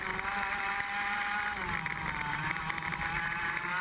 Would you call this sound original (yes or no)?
yes